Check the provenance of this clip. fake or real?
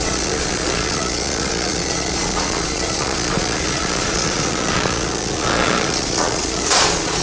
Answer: fake